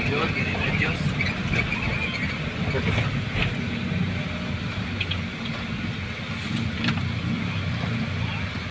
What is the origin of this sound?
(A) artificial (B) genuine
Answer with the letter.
B